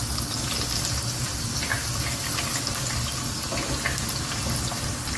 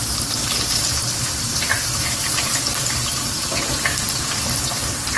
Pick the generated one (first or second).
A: second